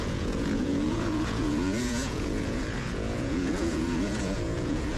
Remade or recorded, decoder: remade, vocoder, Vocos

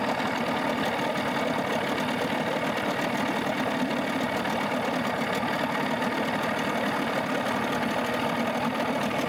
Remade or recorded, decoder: recorded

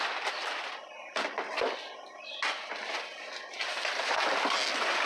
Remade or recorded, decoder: recorded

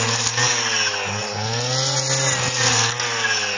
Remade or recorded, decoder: recorded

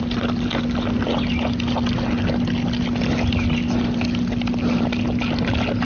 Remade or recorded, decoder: recorded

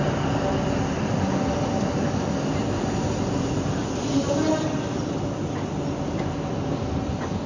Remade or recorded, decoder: recorded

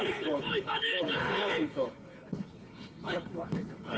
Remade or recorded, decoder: remade, codec, HILCodec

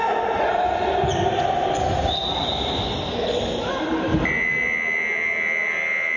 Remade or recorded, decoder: recorded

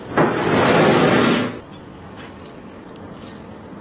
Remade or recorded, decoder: recorded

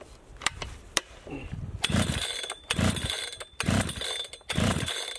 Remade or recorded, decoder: remade, vocoder, BigVGAN v2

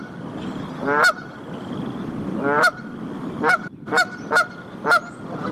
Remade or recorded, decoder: recorded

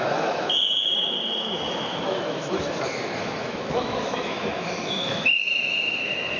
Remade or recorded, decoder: remade, autoencoder, DAC-VAE